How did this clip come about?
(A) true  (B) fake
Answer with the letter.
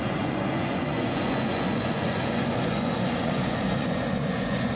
B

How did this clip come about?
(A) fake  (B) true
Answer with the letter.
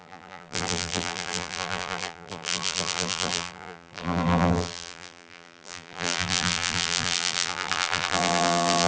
A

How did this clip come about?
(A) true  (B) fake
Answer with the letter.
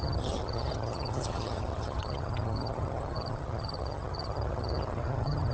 B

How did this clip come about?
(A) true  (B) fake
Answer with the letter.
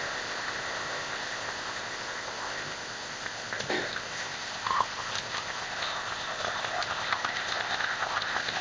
B